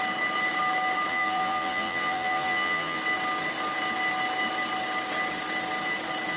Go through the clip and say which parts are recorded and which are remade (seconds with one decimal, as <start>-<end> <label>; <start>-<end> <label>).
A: 0.0-1.1 recorded; 1.1-3.0 remade; 3.0-6.4 recorded